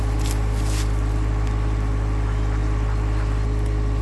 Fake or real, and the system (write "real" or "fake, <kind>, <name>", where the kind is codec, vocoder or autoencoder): real